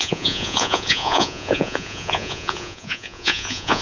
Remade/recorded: remade